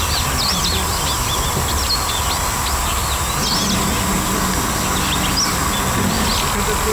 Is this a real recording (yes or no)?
yes